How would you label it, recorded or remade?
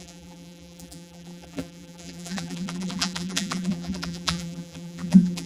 remade